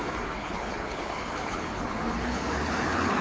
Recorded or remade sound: remade